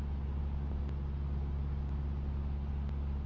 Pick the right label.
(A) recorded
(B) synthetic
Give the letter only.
A